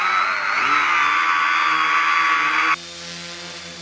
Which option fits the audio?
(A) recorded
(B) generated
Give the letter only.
A